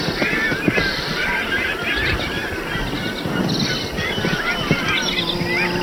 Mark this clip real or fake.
real